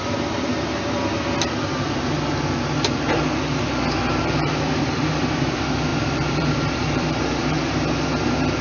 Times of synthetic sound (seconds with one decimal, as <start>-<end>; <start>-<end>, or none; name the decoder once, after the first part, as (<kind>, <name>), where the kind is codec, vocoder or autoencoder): 0.0-0.5 (vocoder, BigVGAN v2); 4.2-8.6